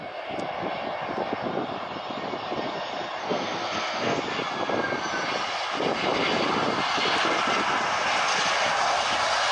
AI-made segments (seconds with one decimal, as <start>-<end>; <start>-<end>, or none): 3.2-4.2